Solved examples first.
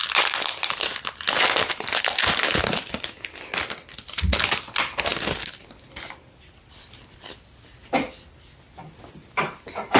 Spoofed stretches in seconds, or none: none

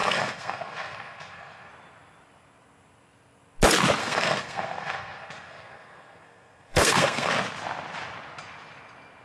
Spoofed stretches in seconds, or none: 0.0-1.7 (codec, SNAC); 4.0-7.3